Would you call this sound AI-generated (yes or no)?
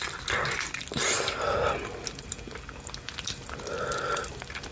no